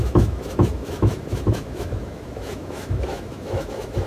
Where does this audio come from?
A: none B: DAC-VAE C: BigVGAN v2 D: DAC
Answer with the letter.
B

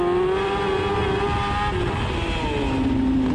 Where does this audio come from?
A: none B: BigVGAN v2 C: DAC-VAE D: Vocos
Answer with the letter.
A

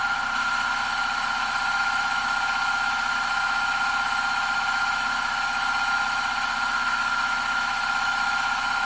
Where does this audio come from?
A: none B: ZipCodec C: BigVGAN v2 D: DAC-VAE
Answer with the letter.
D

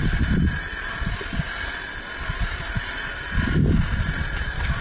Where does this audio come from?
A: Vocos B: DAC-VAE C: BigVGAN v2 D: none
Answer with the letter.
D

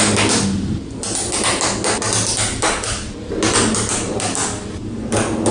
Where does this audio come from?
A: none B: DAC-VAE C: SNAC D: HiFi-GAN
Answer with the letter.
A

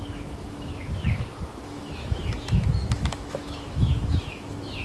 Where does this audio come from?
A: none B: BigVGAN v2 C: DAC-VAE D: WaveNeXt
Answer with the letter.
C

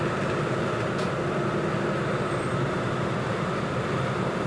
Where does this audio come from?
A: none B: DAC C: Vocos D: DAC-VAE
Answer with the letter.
A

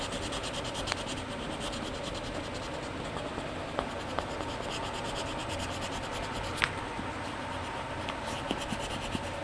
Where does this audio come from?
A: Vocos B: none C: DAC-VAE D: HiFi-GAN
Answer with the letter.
B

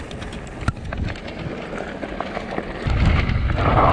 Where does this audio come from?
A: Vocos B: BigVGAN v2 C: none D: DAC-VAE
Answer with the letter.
C